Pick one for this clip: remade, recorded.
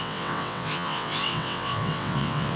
remade